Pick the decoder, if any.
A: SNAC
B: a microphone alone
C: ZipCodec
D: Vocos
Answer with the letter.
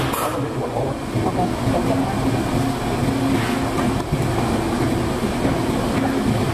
B